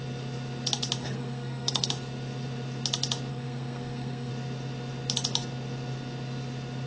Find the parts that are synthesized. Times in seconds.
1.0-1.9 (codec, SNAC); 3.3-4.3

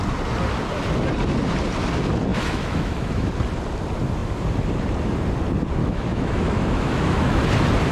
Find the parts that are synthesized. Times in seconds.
2.3-3.3 (autoencoder, DAC-VAE); 5.8-7.4